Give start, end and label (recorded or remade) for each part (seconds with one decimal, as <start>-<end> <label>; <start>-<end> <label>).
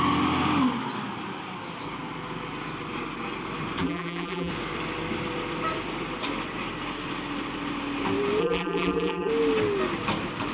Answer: 0.0-3.8 recorded; 3.8-4.5 remade; 4.5-8.4 recorded; 8.4-9.3 remade; 9.3-10.5 recorded